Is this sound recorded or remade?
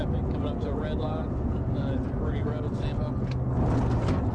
recorded